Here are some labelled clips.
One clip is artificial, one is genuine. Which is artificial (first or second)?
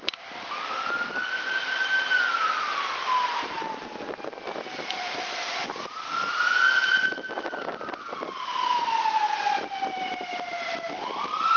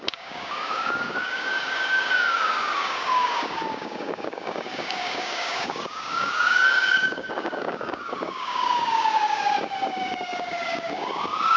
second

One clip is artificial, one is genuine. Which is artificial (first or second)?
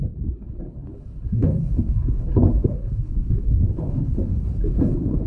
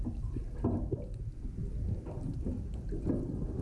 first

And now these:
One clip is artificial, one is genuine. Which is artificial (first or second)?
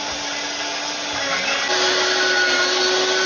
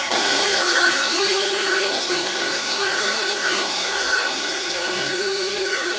second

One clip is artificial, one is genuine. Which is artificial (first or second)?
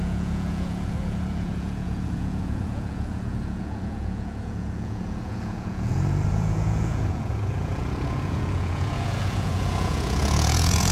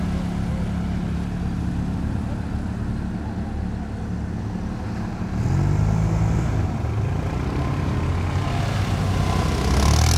first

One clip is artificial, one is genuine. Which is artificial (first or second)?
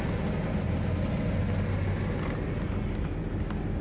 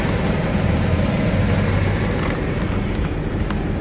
second